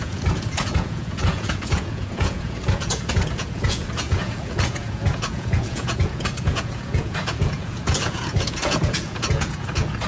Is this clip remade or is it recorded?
remade